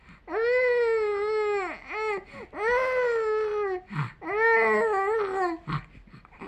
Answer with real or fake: real